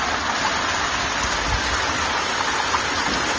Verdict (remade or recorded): recorded